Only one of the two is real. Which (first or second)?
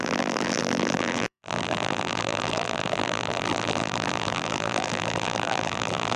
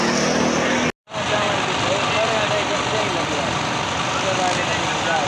second